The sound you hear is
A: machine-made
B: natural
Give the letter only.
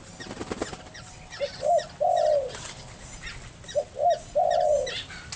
B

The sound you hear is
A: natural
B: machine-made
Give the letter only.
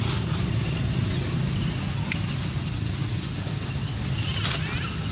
A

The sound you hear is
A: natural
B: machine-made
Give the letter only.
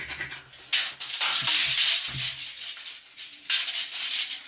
A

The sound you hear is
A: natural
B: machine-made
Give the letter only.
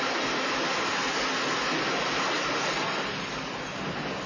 A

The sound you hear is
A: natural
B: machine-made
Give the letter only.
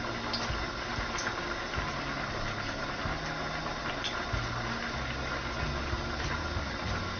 A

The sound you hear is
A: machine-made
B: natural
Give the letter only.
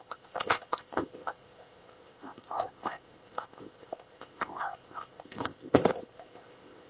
A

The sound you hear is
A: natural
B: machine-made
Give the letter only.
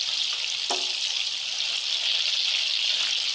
A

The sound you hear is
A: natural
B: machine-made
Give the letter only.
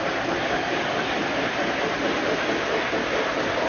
A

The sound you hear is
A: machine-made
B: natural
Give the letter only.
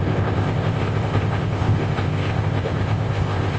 A